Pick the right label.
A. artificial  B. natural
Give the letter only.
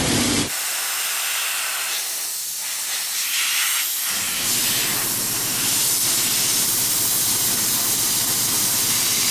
B